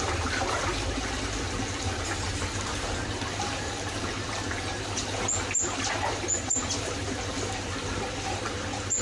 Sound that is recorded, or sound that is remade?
recorded